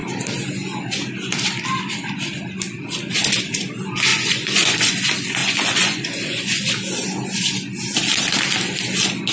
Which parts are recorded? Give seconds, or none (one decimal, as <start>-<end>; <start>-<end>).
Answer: 0.0-4.1; 4.9-5.4; 6.7-9.3